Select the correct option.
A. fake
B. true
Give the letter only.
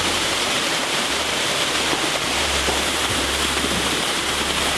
A